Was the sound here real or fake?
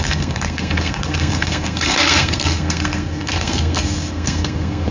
fake